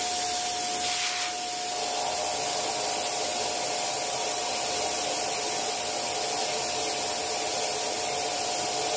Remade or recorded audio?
recorded